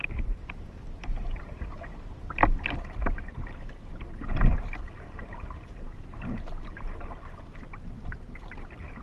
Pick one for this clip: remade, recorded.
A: remade